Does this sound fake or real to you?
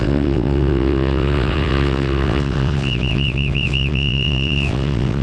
fake